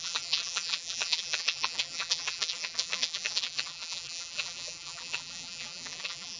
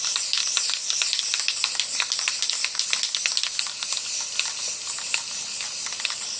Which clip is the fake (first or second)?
first